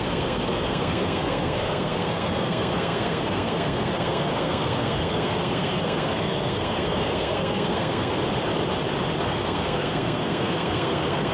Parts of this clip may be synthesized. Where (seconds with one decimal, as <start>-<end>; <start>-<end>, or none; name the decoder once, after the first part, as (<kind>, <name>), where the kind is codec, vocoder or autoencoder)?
0.0-8.1 (codec, SNAC); 9.2-11.3